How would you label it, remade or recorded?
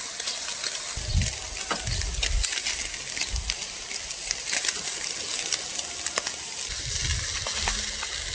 recorded